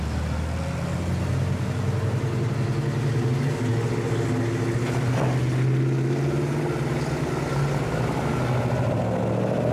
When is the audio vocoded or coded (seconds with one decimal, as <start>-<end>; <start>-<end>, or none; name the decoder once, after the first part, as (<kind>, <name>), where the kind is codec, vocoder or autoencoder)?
none